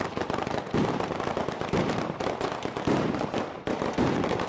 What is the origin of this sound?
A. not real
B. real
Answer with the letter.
A